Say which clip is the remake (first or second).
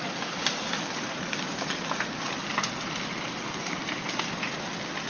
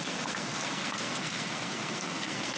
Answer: second